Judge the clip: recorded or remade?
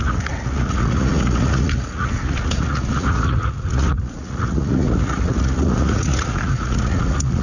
remade